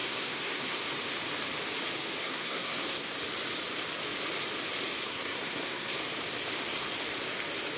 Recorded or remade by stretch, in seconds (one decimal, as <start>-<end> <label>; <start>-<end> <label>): 0.0-0.8 remade; 0.8-2.2 recorded; 2.2-3.2 remade; 3.2-5.1 recorded; 5.1-6.0 remade; 6.0-7.8 recorded